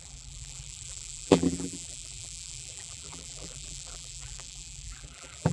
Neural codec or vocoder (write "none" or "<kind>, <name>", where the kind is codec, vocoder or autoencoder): vocoder, BigVGAN v2